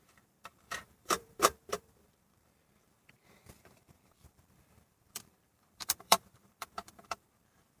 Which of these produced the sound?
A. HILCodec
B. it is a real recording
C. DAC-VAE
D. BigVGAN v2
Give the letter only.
D